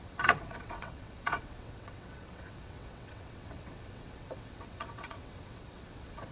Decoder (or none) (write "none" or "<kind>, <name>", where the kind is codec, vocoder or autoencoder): vocoder, WaveNeXt